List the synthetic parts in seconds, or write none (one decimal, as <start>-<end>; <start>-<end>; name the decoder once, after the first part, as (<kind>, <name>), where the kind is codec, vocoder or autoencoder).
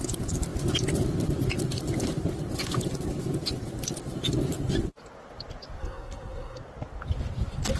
5.8-6.6 (codec, SNAC)